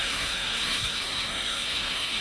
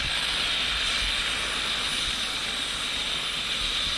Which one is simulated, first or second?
first